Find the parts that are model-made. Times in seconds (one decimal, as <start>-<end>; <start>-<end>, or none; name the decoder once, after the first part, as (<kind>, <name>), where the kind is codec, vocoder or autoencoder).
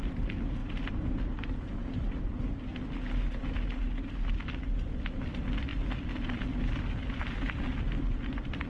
0.0-2.7 (vocoder, BigVGAN v2); 4.3-8.7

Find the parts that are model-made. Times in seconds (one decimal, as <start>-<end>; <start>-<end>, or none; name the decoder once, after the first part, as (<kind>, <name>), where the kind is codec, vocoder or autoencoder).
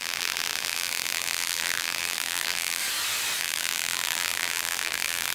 0.0-2.8 (vocoder, BigVGAN v2); 3.4-5.3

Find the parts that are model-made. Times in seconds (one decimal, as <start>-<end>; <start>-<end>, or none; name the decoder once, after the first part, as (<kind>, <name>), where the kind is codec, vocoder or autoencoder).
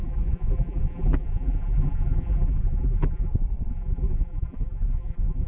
0.0-3.3 (vocoder, BigVGAN v2); 3.7-5.5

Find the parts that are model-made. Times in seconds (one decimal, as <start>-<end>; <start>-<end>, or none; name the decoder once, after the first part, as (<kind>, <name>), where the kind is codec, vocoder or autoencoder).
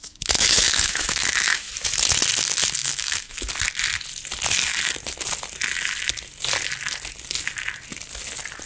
0.0-1.7 (autoencoder, DAC-VAE); 2.8-3.5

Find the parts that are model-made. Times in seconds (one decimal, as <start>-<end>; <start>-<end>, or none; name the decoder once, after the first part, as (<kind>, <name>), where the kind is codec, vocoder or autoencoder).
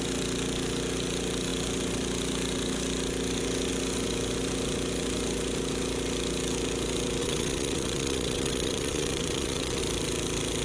7.2-9.8 (vocoder, WaveNeXt)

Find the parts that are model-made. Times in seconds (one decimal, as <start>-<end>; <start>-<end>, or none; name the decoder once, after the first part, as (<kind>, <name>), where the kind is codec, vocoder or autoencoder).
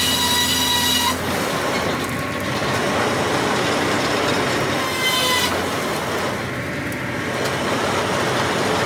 none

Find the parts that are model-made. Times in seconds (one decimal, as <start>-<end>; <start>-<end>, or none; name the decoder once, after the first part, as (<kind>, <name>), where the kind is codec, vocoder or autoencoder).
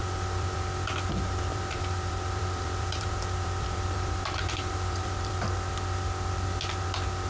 0.0-0.6 (vocoder, BigVGAN v2); 1.5-5.5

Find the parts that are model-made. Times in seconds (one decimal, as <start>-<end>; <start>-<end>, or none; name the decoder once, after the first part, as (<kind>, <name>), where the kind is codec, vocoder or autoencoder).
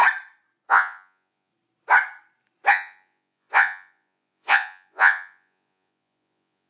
0.7-1.5 (vocoder, Vocos); 2.7-6.7